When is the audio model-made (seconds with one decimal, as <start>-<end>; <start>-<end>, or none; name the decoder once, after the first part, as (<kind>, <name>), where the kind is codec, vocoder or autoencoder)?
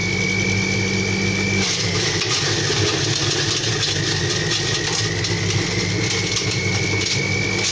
none